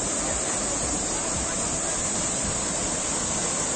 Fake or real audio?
real